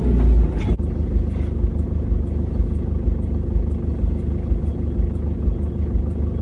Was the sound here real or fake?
real